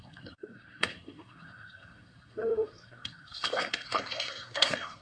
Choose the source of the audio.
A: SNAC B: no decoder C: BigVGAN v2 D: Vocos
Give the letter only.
A